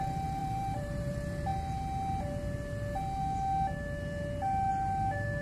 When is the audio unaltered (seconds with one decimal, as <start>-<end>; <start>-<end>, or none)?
0.0-0.4; 1.1-5.4